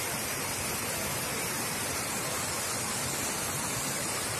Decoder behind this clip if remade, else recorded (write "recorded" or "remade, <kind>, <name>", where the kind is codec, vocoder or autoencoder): recorded